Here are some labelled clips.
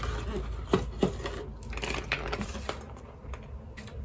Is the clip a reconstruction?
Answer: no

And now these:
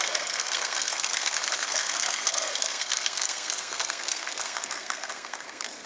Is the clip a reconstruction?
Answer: yes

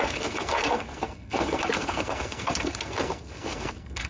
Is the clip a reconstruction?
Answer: yes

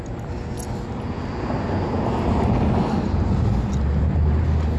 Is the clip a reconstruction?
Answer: no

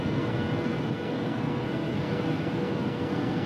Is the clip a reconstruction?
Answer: yes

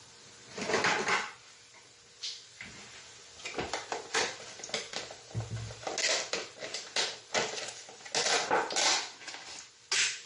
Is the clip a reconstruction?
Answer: no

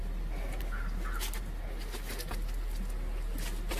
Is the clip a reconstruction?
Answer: no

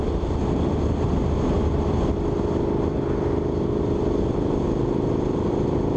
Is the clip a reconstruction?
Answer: no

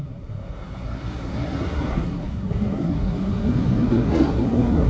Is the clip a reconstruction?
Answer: yes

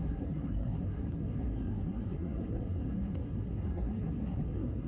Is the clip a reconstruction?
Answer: yes